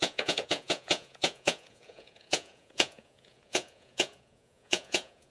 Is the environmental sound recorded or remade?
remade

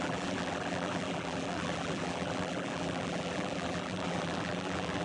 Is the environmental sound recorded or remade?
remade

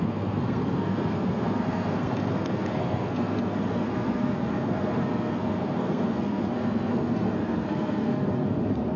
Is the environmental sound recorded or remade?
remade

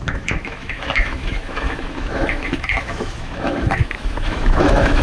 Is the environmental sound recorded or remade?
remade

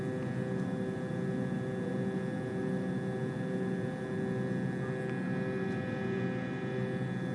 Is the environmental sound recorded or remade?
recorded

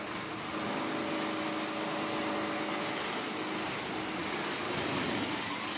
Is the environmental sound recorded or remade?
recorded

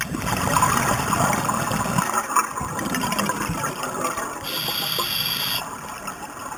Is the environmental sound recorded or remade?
recorded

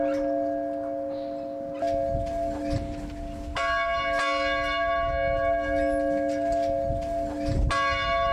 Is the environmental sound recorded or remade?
recorded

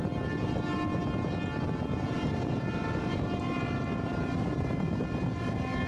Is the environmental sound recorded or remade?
recorded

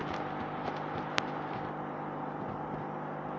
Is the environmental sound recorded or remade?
recorded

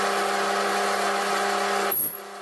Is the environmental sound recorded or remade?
recorded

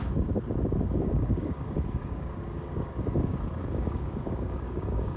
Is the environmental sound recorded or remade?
remade